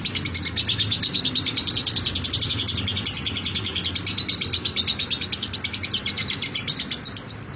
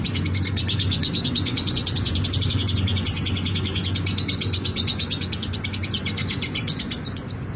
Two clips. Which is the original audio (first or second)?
first